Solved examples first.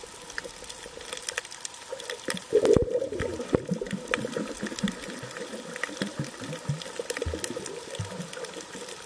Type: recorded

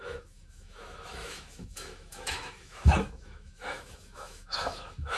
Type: remade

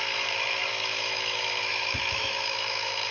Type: remade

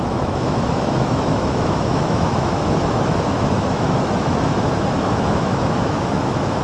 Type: remade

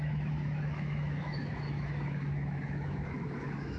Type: remade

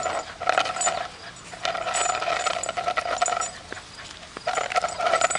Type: recorded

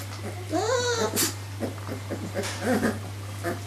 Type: recorded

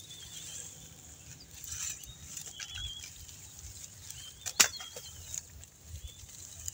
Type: recorded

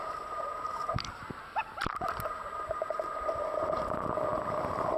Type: recorded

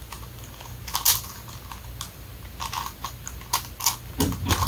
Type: recorded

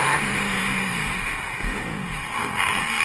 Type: remade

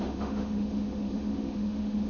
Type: remade